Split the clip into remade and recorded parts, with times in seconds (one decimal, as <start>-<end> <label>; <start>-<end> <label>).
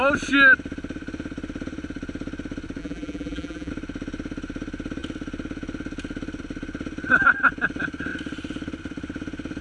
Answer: 0.0-2.8 recorded; 2.8-3.7 remade; 3.7-9.6 recorded